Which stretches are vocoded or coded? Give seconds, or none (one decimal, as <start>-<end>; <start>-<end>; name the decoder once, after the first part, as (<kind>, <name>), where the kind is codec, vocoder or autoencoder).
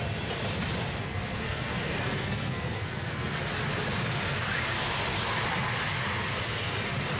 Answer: 1.0-3.4 (codec, SNAC)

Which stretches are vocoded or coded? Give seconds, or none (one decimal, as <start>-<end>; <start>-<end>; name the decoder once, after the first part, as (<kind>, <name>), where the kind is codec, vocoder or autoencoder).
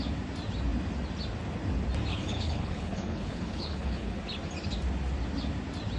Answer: 2.1-4.2 (codec, HILCodec)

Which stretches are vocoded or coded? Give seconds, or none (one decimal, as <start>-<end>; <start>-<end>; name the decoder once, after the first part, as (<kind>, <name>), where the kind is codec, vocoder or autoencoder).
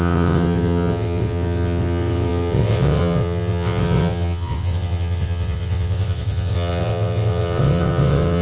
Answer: 0.0-8.4 (vocoder, WaveNeXt)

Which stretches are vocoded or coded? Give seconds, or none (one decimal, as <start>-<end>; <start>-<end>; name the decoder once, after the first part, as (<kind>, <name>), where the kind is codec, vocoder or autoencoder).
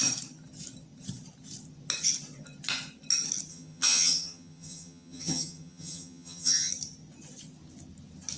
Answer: 3.5-6.7 (vocoder, HiFi-GAN)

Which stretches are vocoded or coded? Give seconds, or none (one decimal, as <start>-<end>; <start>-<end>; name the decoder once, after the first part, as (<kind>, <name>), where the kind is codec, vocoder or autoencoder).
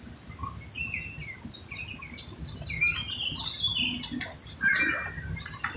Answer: none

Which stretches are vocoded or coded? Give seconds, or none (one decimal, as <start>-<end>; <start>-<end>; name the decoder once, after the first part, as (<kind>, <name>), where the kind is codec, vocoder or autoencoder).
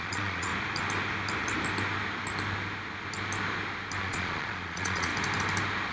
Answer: 0.0-0.5 (vocoder, Vocos); 4.0-5.1